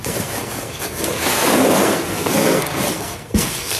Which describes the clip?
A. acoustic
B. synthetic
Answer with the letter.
B